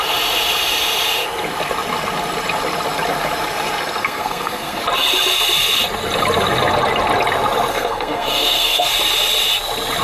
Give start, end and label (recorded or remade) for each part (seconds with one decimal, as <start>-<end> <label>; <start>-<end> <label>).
0.0-4.0 recorded; 4.0-4.8 remade; 4.8-7.7 recorded; 7.7-8.9 remade; 8.9-10.0 recorded